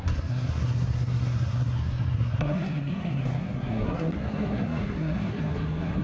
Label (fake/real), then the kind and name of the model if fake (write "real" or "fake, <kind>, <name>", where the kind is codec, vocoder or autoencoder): fake, codec, SNAC